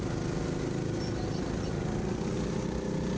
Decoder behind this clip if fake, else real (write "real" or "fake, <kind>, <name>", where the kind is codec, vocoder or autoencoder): real